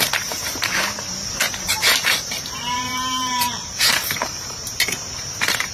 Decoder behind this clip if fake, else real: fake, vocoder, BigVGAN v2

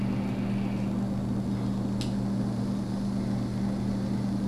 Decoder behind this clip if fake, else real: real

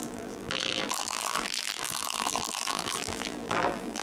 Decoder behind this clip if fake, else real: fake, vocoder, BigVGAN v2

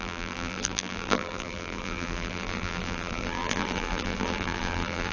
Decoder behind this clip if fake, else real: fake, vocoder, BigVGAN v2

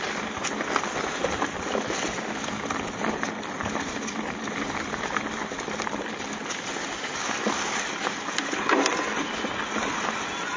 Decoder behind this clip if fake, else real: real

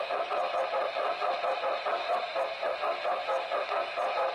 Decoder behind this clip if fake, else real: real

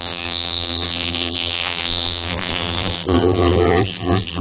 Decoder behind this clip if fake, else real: fake, vocoder, BigVGAN v2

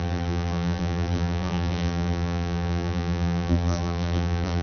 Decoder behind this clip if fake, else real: fake, vocoder, BigVGAN v2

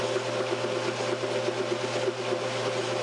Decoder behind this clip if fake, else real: real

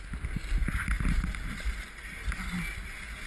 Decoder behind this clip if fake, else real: real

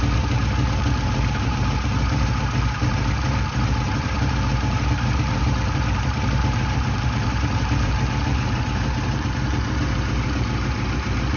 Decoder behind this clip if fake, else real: fake, vocoder, BigVGAN v2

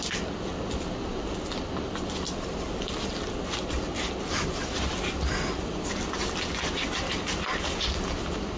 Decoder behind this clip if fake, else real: real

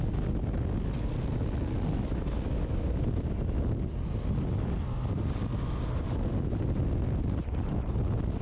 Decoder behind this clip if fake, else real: real